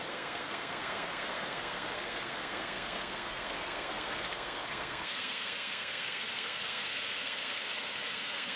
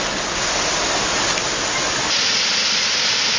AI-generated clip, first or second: first